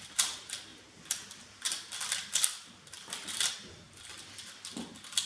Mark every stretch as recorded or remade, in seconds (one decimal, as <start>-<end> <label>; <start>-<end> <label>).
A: 0.0-5.3 recorded